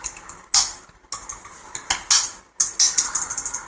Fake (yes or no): no